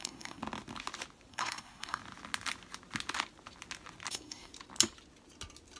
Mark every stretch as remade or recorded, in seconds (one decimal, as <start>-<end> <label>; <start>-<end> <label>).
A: 0.0-0.4 remade; 0.4-1.3 recorded; 1.3-2.0 remade; 2.0-4.1 recorded; 4.1-4.5 remade; 4.5-5.8 recorded

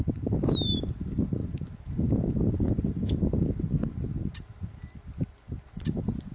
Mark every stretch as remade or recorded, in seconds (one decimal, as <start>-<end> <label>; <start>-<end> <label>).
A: 0.0-6.3 recorded

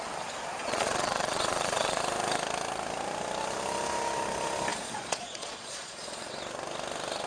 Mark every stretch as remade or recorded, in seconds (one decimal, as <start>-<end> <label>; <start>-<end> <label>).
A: 0.0-0.6 recorded; 0.6-2.0 remade; 2.0-4.7 recorded; 4.7-6.3 remade; 6.3-7.3 recorded

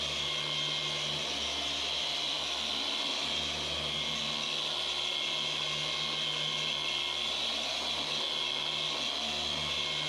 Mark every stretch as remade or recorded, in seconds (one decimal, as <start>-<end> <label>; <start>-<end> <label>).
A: 0.0-10.1 recorded

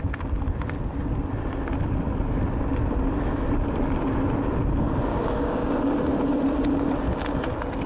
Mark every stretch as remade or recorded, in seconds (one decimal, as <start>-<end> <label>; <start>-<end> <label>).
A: 0.0-5.1 recorded; 5.1-5.7 remade; 5.7-7.9 recorded

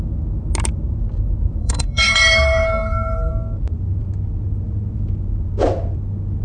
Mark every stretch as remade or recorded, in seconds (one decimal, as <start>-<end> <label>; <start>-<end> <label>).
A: 0.0-1.6 recorded; 1.6-3.3 remade; 3.3-6.4 recorded

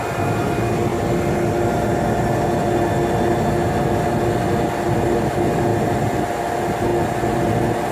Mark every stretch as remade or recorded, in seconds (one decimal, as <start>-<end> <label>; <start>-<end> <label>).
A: 0.0-7.9 recorded

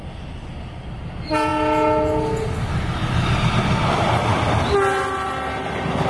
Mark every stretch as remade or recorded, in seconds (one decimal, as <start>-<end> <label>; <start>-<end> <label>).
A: 0.0-6.1 recorded